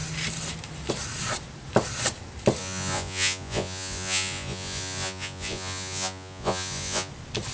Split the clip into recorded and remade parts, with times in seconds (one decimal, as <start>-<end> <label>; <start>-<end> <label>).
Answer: 0.0-2.6 recorded; 2.6-7.1 remade; 7.1-7.5 recorded